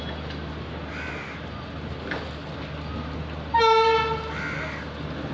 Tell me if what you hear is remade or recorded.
recorded